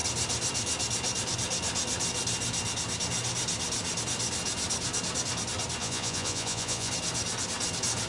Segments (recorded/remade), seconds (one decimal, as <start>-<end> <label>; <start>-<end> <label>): 0.0-5.8 recorded; 5.8-6.9 remade; 6.9-8.1 recorded